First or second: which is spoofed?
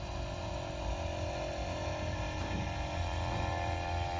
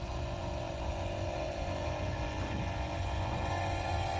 second